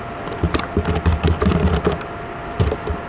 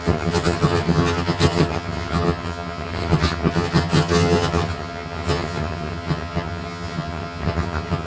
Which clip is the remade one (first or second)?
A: second